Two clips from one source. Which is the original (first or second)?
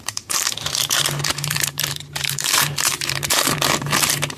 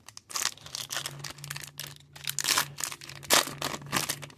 second